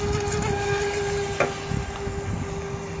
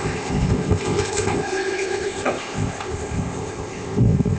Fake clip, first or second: second